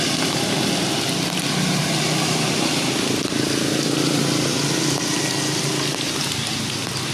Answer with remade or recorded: recorded